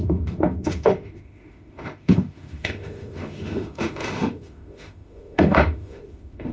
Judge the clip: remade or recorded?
remade